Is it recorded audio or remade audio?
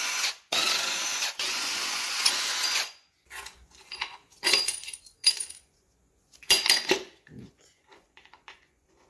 remade